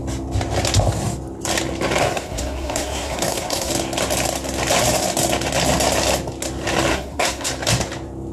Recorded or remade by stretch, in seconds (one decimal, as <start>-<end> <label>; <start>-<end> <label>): 0.0-2.0 recorded; 2.0-3.7 remade; 3.7-6.9 recorded; 6.9-7.5 remade; 7.5-8.3 recorded